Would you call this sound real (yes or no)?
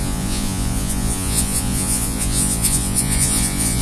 no